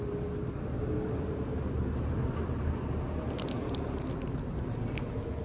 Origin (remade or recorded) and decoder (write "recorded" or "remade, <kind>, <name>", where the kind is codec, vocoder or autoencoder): recorded